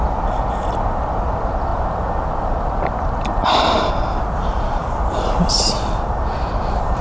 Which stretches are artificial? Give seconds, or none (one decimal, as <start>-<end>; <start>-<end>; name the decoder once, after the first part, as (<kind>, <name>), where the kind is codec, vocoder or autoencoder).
1.7-3.9 (vocoder, BigVGAN v2); 4.8-7.0